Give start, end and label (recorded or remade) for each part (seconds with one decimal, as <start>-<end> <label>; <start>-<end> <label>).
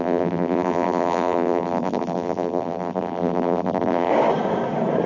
0.0-4.1 remade; 4.1-5.1 recorded